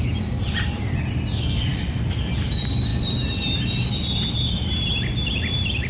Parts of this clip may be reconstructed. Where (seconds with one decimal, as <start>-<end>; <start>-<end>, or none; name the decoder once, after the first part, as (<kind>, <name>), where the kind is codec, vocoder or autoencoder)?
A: none